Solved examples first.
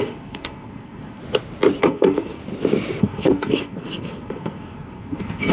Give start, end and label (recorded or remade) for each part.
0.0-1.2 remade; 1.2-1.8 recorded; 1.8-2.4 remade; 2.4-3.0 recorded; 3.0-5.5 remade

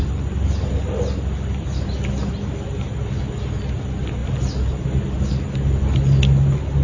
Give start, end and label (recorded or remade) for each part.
0.0-6.8 recorded